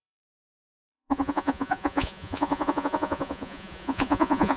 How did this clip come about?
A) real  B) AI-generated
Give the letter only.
B